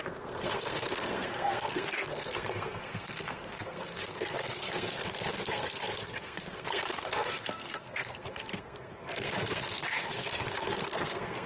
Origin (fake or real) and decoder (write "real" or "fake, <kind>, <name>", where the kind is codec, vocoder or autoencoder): fake, codec, SNAC